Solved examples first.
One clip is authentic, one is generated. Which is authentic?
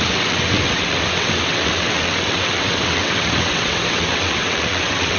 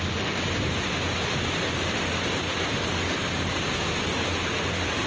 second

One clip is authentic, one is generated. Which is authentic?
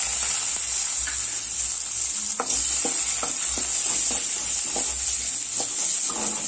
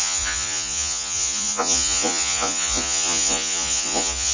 first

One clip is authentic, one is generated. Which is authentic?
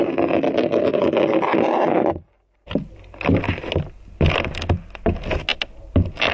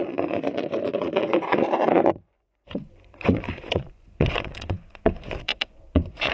first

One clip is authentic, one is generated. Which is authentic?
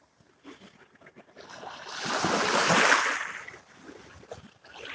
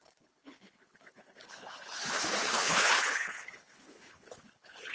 first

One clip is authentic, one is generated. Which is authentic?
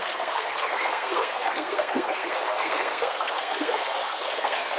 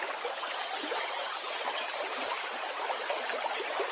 second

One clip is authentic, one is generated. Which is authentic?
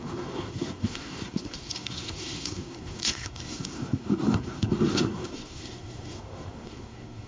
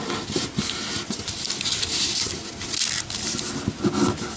second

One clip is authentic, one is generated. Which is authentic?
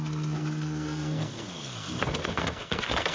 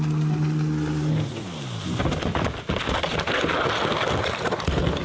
second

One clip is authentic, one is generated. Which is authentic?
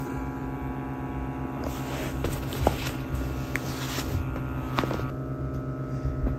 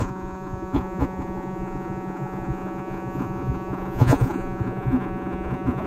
first